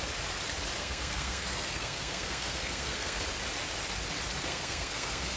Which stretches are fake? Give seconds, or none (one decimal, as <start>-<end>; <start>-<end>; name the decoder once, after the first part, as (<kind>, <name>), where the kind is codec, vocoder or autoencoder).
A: 0.8-3.2 (codec, SNAC); 4.5-5.4